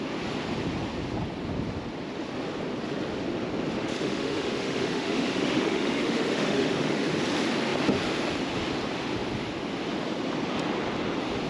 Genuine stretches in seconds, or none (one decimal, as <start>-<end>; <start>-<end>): 0.0-3.8; 7.1-11.5